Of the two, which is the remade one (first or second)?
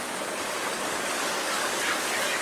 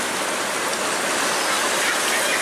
first